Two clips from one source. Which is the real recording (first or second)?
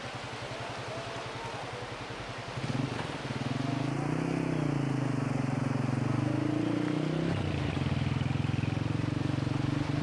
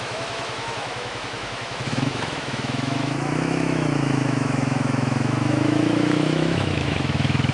first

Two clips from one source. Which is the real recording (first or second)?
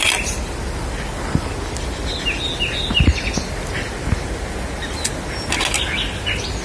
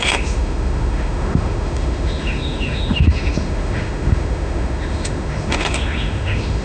first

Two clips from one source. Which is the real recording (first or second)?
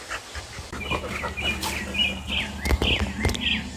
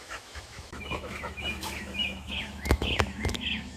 first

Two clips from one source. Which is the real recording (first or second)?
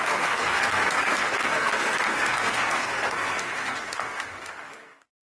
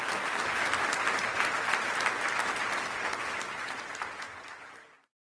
second